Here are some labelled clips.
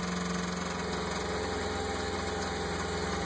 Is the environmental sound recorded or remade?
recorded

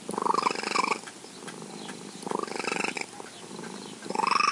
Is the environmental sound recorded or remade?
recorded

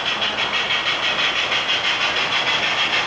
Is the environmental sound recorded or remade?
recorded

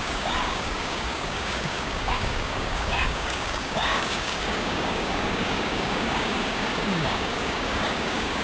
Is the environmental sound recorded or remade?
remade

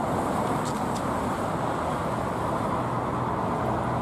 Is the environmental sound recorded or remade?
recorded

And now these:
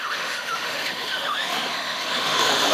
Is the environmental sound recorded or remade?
remade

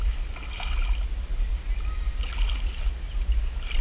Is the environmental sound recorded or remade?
recorded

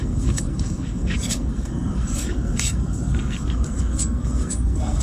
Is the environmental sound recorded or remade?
remade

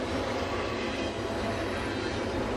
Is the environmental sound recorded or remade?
recorded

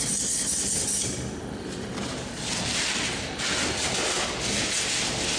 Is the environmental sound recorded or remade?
recorded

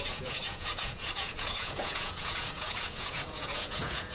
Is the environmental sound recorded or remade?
remade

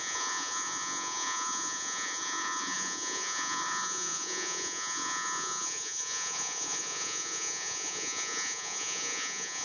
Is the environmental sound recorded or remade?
remade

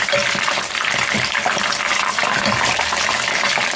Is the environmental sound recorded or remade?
recorded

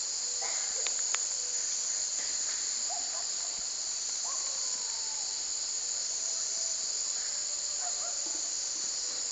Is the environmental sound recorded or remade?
recorded